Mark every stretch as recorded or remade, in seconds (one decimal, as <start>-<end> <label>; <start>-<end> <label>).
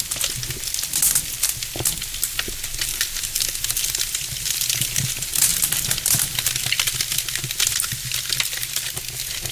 0.0-9.5 recorded